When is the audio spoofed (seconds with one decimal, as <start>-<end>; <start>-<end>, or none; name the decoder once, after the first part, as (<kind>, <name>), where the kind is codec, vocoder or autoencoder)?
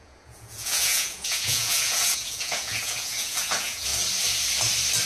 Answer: 0.0-3.9 (vocoder, Vocos)